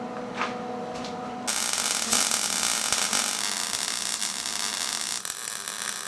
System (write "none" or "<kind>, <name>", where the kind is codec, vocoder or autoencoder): none